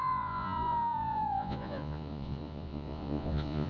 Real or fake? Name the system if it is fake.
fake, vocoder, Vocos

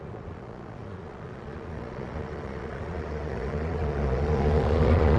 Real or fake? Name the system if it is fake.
fake, vocoder, Vocos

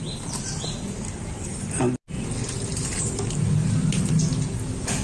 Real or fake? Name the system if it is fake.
real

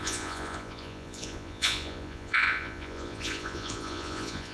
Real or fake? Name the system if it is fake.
fake, vocoder, Vocos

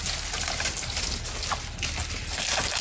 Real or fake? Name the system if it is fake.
real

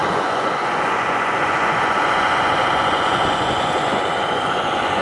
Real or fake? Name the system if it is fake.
fake, vocoder, Vocos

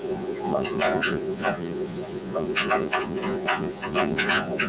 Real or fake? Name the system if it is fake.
fake, vocoder, Vocos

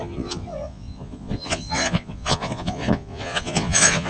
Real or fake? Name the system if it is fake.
fake, vocoder, Vocos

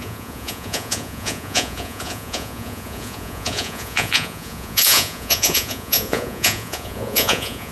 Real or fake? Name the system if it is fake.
fake, vocoder, Vocos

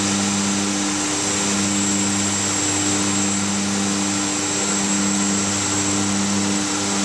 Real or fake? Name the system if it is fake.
real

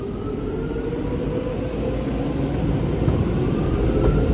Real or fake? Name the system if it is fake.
real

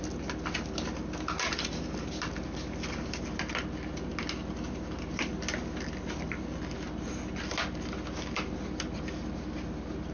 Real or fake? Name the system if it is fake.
real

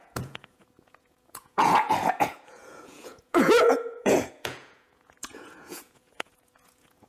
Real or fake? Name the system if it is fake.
fake, vocoder, Vocos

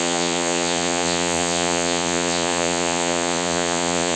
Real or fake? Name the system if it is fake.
fake, vocoder, Vocos